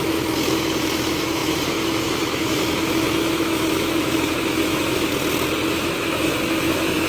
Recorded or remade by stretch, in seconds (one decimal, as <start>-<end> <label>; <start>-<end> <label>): 0.0-5.1 remade; 5.1-5.7 recorded; 5.7-7.1 remade